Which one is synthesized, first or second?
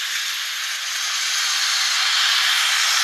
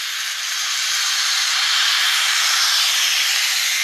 second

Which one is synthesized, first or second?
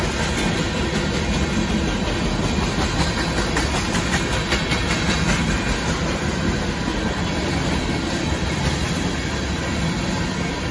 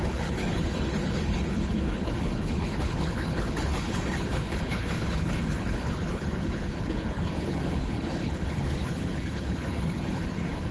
second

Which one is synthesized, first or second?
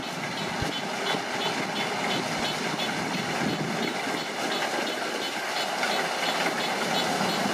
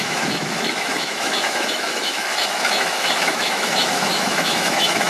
second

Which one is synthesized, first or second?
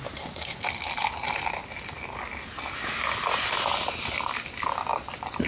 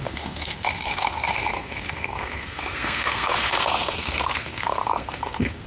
second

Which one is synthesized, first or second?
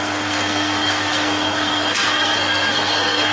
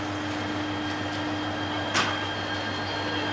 first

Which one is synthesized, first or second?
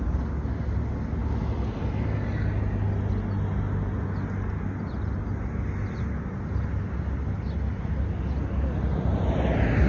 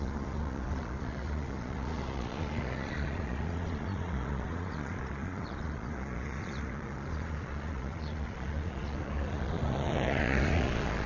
second